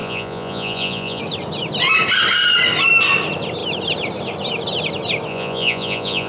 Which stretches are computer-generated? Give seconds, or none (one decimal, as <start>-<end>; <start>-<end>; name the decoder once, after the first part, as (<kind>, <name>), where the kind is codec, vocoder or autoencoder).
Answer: 0.0-1.2 (vocoder, Vocos); 5.3-6.3